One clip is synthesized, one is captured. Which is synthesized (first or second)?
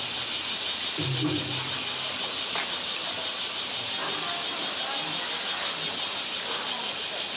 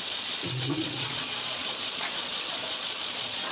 second